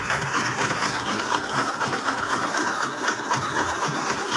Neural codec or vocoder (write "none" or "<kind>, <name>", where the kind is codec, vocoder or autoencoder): codec, SNAC